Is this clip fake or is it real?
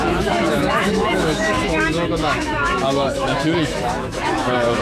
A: fake